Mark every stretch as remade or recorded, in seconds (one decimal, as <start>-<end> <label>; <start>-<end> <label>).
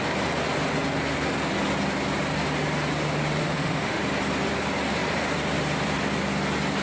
0.0-3.4 recorded; 3.4-4.0 remade; 4.0-6.8 recorded